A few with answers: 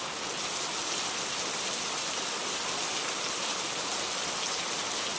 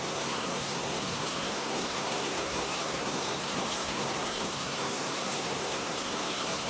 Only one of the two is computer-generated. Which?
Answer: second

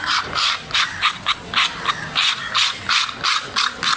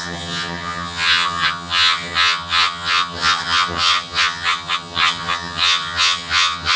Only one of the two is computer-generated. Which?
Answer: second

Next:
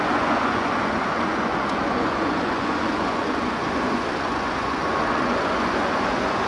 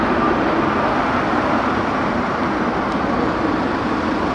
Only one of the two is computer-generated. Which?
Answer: first